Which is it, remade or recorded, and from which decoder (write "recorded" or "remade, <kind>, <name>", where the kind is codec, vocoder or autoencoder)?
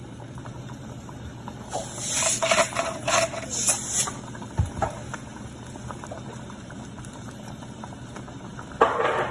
remade, vocoder, BigVGAN v2